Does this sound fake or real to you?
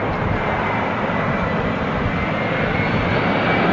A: real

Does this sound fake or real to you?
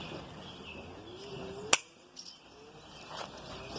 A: real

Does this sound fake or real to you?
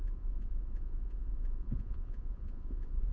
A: fake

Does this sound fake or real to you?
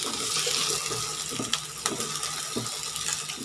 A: real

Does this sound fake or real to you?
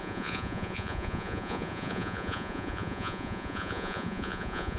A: fake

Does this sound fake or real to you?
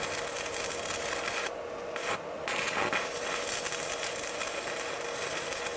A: real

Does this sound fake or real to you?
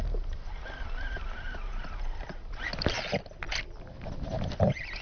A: real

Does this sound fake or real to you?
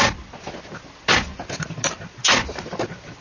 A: real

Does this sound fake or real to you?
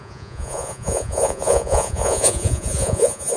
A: fake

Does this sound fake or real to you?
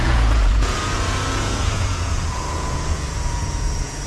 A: fake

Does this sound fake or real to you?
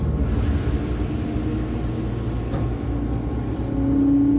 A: real